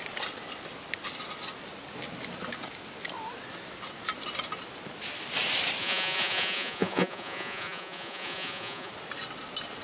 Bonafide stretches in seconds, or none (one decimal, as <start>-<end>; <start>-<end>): 0.0-5.8; 8.9-9.8